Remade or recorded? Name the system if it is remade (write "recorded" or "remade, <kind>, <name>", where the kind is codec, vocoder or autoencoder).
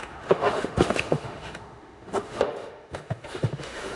remade, autoencoder, DAC-VAE